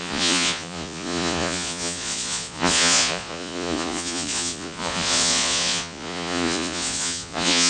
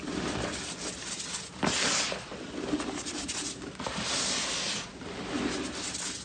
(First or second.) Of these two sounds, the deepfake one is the first